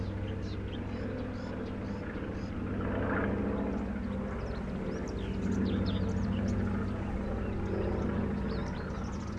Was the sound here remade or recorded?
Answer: recorded